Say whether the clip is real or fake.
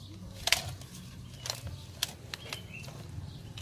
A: real